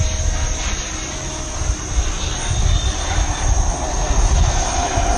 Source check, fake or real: real